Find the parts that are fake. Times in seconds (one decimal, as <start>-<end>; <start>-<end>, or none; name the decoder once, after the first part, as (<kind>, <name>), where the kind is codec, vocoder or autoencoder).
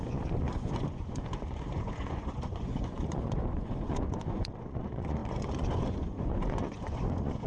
0.0-7.5 (vocoder, Vocos)